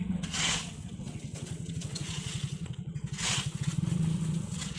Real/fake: fake